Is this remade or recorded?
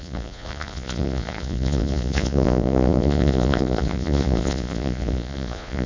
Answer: remade